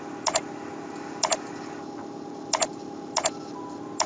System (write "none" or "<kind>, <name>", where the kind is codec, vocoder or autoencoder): none